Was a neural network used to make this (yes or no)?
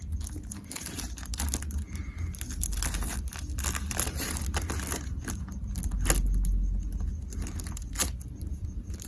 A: no